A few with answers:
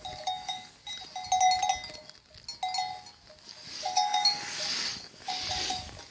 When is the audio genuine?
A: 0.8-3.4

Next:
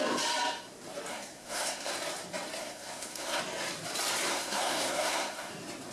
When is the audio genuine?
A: 0.0-1.1; 1.9-2.6; 3.4-4.3; 5.5-5.9

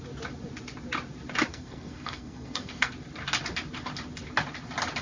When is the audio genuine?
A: 0.0-1.5; 2.9-5.0

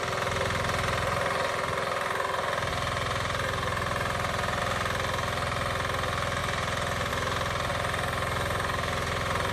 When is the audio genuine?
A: 0.0-2.7; 4.6-6.4; 7.1-7.7